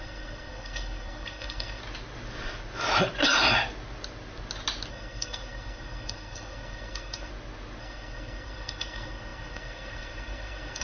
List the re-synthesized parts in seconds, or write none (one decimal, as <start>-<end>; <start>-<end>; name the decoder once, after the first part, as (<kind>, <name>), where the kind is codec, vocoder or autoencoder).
0.0-1.8 (codec, SNAC); 4.9-7.3; 7.8-10.8